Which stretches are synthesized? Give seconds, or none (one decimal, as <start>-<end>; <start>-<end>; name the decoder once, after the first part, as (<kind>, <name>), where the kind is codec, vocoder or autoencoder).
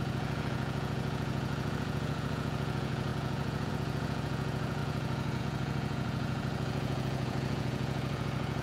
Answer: 0.0-8.6 (vocoder, Vocos)